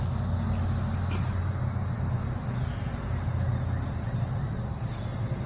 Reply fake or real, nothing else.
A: real